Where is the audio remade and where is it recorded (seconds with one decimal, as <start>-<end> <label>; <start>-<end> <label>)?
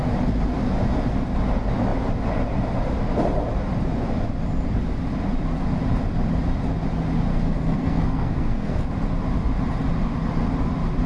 0.0-7.3 recorded; 7.3-8.9 remade; 8.9-11.1 recorded